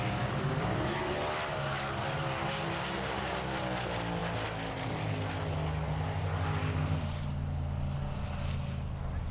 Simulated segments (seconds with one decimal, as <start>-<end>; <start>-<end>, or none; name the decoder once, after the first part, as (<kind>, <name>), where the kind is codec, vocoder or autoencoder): none